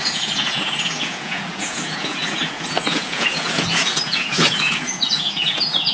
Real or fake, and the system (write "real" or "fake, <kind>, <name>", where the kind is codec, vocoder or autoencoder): fake, vocoder, Vocos